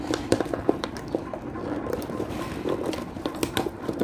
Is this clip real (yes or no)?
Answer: no